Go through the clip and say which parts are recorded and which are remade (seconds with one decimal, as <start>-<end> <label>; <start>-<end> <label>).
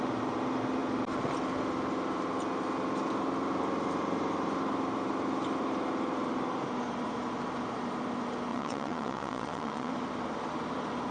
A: 0.0-8.5 recorded; 8.5-9.9 remade; 9.9-11.1 recorded